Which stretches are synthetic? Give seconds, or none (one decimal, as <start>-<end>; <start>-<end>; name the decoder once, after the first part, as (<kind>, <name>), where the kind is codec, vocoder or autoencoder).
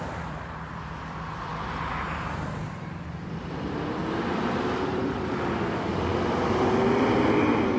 0.0-7.8 (vocoder, BigVGAN v2)